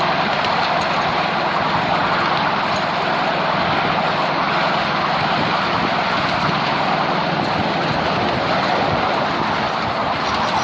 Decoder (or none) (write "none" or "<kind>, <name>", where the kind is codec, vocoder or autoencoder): none